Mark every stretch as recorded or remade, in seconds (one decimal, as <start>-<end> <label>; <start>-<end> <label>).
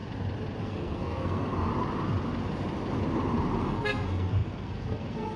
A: 0.0-0.6 recorded; 0.6-1.7 remade; 1.7-3.6 recorded; 3.6-5.4 remade